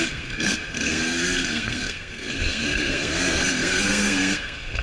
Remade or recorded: remade